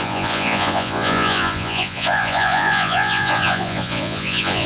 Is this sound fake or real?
fake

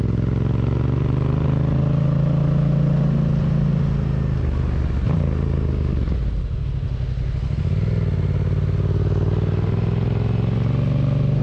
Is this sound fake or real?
real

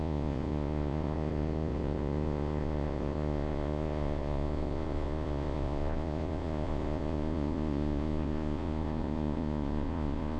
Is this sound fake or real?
fake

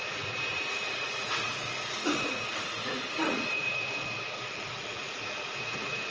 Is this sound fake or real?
fake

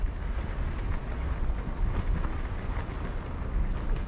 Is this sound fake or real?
real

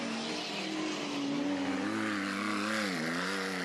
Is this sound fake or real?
real